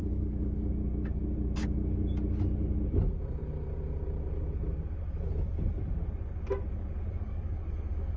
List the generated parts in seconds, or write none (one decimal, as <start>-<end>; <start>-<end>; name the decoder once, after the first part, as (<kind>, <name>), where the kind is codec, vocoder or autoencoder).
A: 0.0-0.7 (codec, DAC); 7.1-8.2